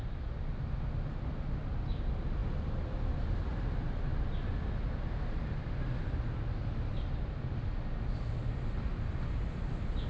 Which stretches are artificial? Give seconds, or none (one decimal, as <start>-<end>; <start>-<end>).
none